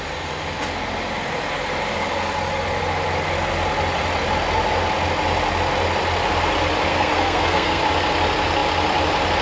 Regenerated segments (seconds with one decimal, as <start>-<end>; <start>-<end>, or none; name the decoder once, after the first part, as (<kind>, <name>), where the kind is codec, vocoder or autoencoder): 6.9-7.8 (codec, SNAC)